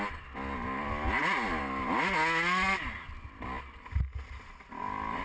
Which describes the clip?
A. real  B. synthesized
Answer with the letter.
A